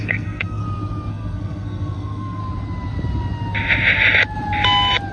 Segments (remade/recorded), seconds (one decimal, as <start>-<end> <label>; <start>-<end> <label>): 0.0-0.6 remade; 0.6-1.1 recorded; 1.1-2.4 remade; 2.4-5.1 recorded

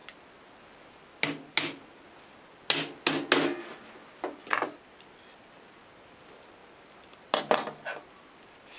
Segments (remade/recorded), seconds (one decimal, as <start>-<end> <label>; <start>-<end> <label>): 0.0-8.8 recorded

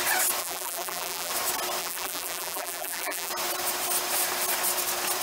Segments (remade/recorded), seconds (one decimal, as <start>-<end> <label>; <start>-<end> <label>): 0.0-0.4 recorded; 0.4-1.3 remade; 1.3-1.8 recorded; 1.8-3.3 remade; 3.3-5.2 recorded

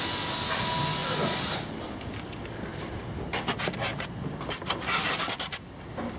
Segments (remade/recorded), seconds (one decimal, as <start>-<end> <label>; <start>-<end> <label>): 0.0-6.2 recorded

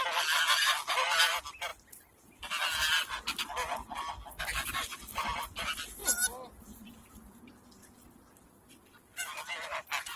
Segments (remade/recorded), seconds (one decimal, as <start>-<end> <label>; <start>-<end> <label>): 0.0-10.2 recorded

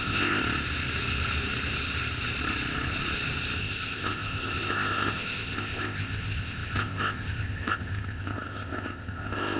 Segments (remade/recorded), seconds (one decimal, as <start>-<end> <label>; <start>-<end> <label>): 0.0-0.4 remade; 0.4-3.6 recorded; 3.6-9.6 remade

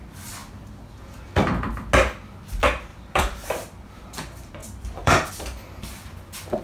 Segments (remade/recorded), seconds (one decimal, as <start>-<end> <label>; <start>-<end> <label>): 0.0-2.9 recorded; 2.9-4.1 remade; 4.1-4.6 recorded; 4.6-5.3 remade; 5.3-6.6 recorded